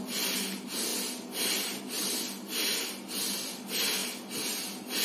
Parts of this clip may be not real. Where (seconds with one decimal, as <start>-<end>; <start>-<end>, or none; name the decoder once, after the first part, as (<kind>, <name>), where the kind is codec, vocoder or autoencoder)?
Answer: none